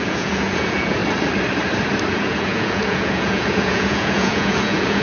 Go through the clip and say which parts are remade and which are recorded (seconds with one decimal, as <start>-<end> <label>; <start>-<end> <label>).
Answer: 0.0-1.0 remade; 1.0-2.1 recorded; 2.1-5.0 remade